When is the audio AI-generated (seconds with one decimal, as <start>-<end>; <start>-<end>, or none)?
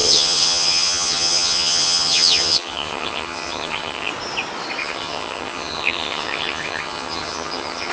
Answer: 0.0-4.1; 4.8-7.9